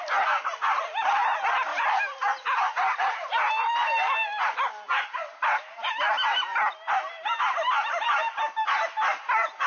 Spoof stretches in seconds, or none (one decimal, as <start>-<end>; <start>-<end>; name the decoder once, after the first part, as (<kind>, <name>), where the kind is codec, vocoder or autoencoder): none